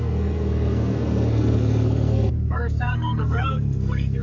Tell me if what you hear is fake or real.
fake